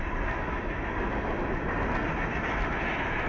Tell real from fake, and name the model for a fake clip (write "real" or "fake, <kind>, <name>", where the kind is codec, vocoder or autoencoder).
real